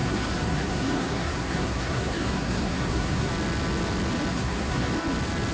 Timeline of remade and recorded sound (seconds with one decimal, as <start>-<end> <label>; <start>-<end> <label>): 0.0-3.3 remade; 3.3-4.3 recorded; 4.3-4.9 remade; 4.9-5.5 recorded